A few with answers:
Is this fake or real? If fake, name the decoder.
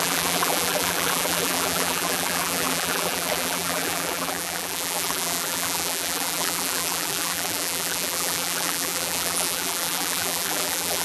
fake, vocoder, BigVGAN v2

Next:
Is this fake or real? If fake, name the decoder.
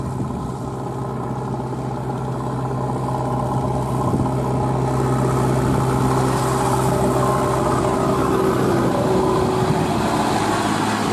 real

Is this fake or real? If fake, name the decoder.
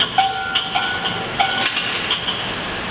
real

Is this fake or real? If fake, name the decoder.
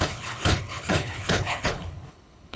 fake, codec, HILCodec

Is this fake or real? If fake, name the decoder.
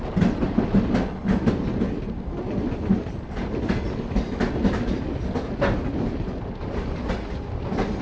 real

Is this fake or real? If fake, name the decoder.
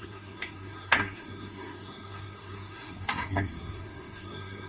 fake, codec, SNAC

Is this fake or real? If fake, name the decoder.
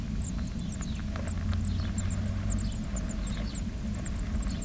real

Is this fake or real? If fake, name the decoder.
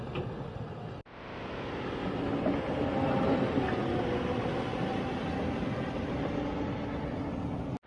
real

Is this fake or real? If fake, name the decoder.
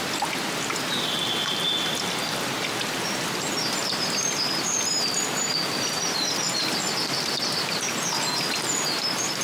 fake, vocoder, BigVGAN v2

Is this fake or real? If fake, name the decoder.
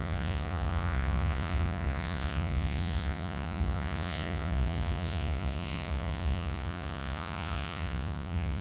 fake, vocoder, Vocos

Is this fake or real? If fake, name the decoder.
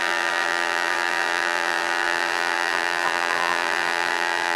fake, vocoder, BigVGAN v2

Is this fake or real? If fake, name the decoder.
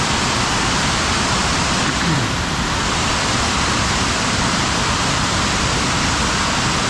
fake, vocoder, BigVGAN v2